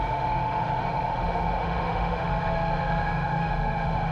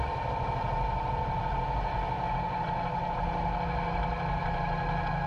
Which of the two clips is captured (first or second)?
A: second